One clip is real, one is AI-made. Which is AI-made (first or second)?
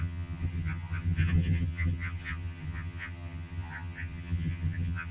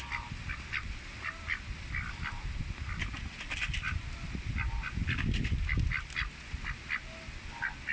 first